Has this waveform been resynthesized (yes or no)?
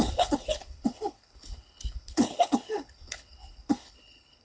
yes